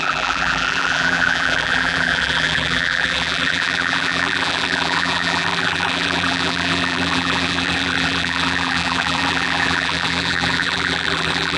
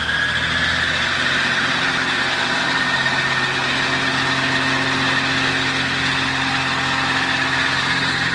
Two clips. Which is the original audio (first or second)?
second